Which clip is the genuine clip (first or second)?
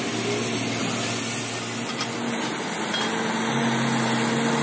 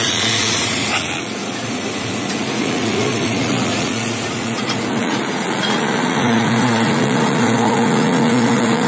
first